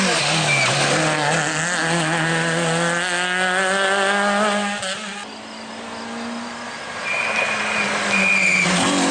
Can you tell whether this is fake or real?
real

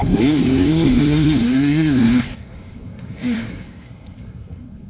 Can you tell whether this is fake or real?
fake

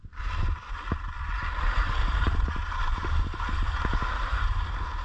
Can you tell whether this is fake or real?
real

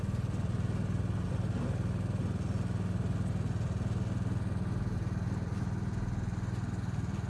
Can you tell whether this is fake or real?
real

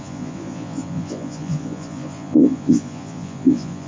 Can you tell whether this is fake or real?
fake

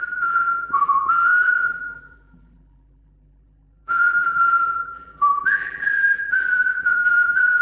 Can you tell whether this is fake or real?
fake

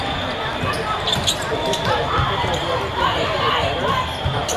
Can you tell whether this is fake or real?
real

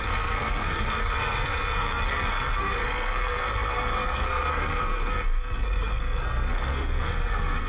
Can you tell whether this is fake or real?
fake